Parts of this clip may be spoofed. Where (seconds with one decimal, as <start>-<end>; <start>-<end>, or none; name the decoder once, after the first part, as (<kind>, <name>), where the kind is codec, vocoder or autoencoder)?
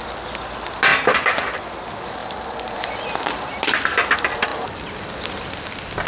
0.9-1.6 (vocoder, BigVGAN v2); 2.2-3.3